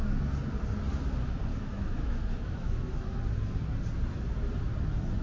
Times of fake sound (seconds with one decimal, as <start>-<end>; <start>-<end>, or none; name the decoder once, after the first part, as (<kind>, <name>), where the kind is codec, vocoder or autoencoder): 1.5-2.9 (autoencoder, DAC-VAE)